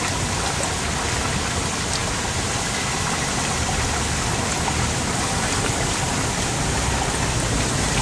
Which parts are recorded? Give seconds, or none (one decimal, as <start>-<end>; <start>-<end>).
0.0-8.0